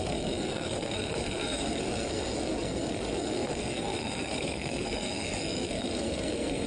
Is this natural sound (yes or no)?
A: no